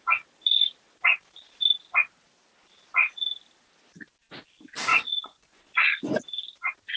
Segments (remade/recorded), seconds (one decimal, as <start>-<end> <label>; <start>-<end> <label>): 0.0-4.9 recorded; 4.9-5.7 remade; 5.7-7.0 recorded